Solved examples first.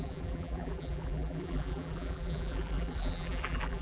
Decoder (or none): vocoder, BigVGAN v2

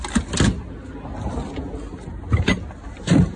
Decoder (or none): none